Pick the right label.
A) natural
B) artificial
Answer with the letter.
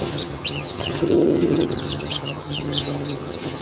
B